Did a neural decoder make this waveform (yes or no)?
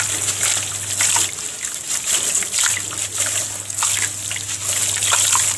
no